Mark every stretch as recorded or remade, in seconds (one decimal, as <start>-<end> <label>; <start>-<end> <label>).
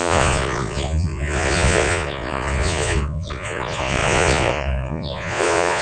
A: 0.0-5.8 remade